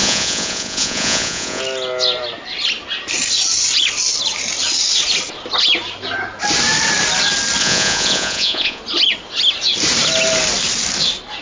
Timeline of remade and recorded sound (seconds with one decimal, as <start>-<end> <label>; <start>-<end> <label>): 0.0-1.6 remade; 1.6-7.6 recorded; 7.6-8.8 remade; 8.8-11.4 recorded